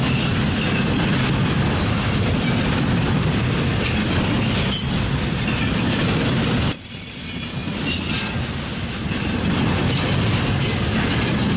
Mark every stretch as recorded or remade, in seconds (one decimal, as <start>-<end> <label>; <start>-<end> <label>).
0.0-11.6 recorded